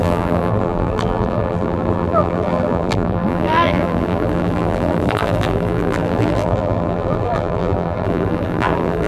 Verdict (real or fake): fake